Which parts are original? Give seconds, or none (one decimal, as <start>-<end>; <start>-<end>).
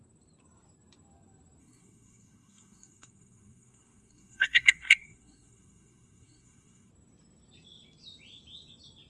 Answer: 0.0-1.6; 6.9-9.1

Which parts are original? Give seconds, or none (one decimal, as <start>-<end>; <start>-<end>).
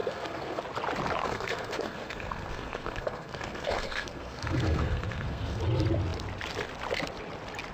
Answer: 0.6-1.2; 5.6-7.7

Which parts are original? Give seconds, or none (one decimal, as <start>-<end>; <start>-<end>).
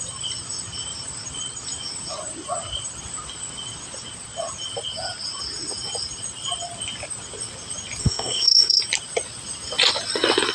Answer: 0.0-8.0; 8.8-10.5